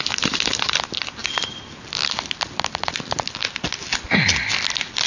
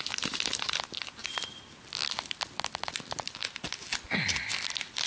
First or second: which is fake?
first